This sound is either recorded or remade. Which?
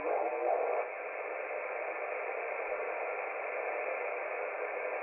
recorded